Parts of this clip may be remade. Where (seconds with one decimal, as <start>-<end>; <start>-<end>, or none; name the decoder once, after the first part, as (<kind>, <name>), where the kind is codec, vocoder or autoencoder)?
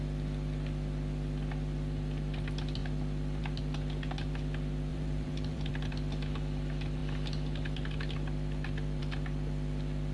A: 4.9-5.7 (vocoder, BigVGAN v2)